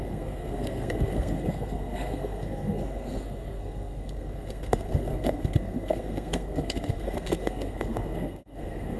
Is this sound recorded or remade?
remade